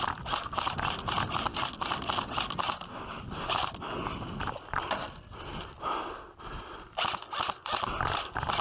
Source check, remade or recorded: recorded